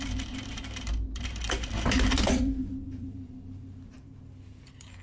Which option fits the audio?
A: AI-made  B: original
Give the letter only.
A